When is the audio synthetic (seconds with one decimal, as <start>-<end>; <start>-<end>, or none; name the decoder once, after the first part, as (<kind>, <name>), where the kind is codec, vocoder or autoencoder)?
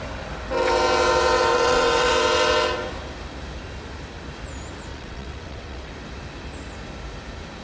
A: 1.5-2.1 (vocoder, WaveNeXt); 4.9-5.9